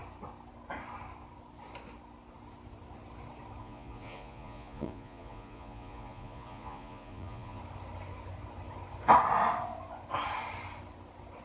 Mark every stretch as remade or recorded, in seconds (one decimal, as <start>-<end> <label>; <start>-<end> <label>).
0.0-3.6 recorded; 3.6-7.6 remade; 7.6-11.4 recorded